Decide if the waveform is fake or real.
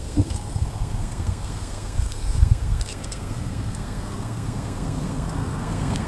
fake